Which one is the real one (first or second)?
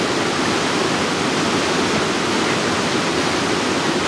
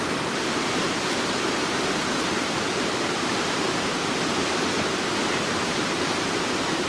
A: first